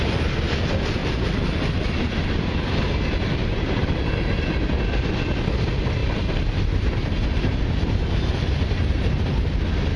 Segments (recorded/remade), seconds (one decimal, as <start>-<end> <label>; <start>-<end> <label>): 0.0-1.0 recorded; 1.0-2.6 remade; 2.6-3.4 recorded; 3.4-4.0 remade; 4.0-6.0 recorded; 6.0-9.1 remade; 9.1-10.0 recorded